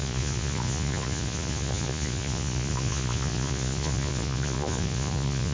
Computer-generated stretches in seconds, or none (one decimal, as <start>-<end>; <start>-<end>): 0.0-5.5